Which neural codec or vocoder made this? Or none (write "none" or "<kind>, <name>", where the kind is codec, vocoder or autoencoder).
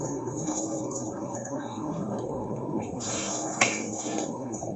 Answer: codec, SNAC